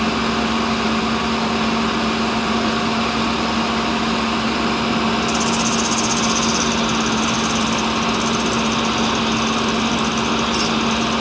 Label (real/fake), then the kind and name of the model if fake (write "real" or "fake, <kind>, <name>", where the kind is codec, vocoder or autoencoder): real